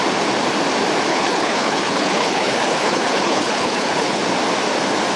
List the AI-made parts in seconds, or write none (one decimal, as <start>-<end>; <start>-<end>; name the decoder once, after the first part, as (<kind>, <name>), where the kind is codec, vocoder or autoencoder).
1.1-4.2 (codec, HILCodec)